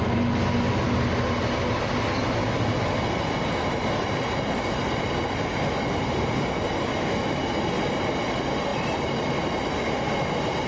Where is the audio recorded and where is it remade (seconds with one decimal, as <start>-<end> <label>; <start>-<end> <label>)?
0.0-6.9 recorded; 6.9-7.4 remade; 7.4-10.7 recorded